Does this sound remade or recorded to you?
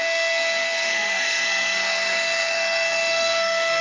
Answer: remade